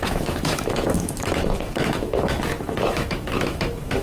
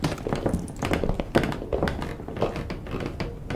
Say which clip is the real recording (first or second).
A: second